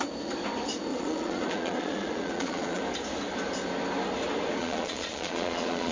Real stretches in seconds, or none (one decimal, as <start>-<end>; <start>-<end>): 0.0-0.9; 2.8-4.6